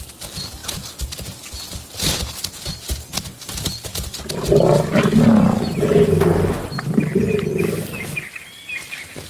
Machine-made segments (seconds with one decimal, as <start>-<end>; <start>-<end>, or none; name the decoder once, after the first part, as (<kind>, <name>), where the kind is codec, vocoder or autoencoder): none